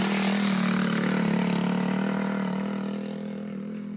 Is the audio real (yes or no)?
yes